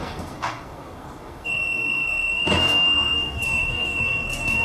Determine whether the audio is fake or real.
fake